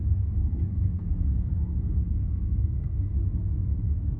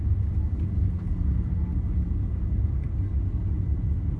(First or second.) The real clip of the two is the second